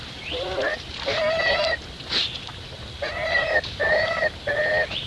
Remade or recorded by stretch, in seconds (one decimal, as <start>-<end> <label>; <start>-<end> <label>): 0.0-5.1 recorded